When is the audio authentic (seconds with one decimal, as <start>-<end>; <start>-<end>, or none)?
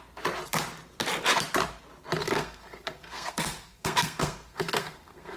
0.0-2.2